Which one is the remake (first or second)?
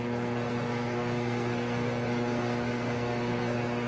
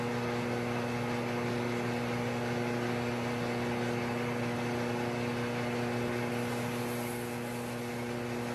first